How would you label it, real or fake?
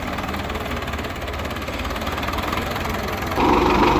fake